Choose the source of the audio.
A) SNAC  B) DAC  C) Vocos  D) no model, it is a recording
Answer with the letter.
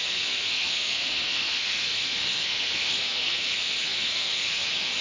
A